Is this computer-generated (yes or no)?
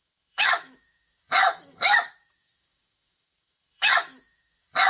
yes